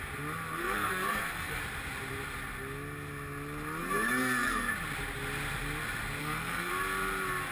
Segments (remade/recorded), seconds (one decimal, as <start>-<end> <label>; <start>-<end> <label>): 0.0-0.6 recorded; 0.6-1.6 remade; 1.6-3.8 recorded; 3.8-4.7 remade; 4.7-6.2 recorded; 6.2-6.7 remade; 6.7-7.5 recorded